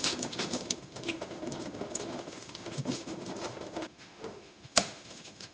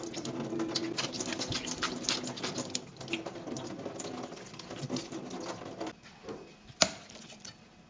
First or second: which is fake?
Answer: first